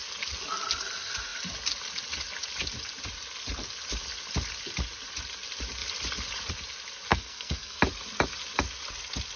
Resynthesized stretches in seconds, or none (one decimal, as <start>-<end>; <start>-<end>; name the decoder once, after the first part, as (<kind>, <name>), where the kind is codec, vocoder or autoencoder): 7.1-7.8 (codec, SNAC)